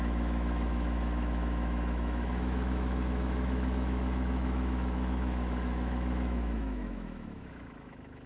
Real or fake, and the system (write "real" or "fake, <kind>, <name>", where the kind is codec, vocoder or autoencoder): fake, autoencoder, DAC-VAE